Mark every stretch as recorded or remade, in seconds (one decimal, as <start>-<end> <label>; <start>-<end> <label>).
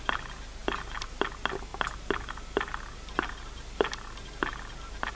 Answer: 0.0-5.1 recorded